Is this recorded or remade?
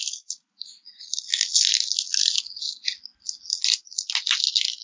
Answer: recorded